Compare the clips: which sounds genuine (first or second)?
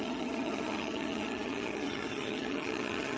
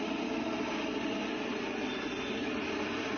second